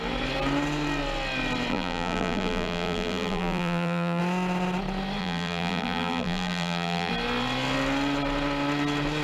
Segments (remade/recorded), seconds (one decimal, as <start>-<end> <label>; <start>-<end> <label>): 0.0-1.7 recorded; 1.7-4.2 remade; 4.2-5.2 recorded; 5.2-7.1 remade; 7.1-9.2 recorded